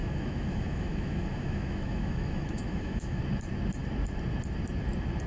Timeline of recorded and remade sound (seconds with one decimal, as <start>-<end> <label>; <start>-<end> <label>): 0.0-3.2 remade; 3.2-5.3 recorded